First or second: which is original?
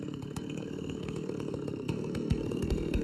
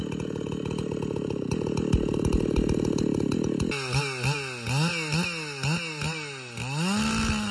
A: second